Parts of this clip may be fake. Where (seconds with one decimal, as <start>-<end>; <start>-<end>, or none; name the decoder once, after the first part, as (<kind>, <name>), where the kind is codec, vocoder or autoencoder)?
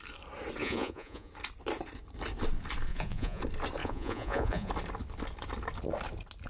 0.6-1.3 (vocoder, Vocos); 2.9-3.4; 3.8-4.7